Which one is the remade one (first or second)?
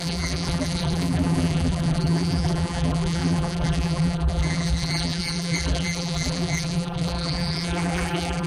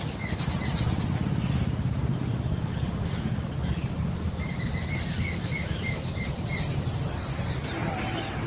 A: first